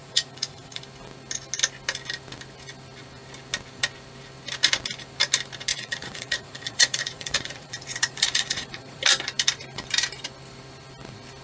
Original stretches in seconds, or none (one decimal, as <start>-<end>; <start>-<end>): 0.8-5.7; 9.0-11.4